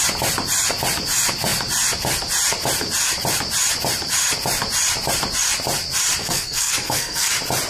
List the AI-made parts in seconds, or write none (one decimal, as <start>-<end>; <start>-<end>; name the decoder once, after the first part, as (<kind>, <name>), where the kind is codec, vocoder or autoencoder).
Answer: 6.2-7.3 (codec, SNAC)